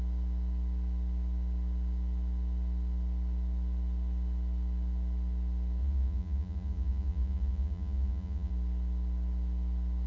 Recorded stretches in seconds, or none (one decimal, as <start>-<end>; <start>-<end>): 0.0-5.8; 8.5-10.1